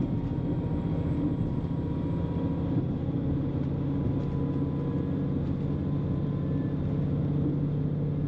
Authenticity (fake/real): real